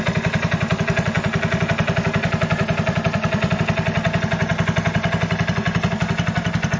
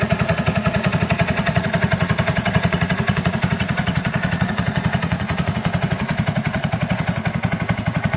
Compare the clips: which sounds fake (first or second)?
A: second